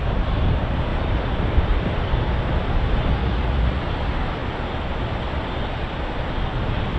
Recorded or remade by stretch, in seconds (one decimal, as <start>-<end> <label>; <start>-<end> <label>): 0.0-3.2 recorded; 3.2-3.8 remade; 3.8-7.0 recorded